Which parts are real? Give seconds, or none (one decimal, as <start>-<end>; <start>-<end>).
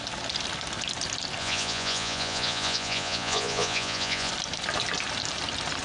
0.0-1.4; 4.3-5.8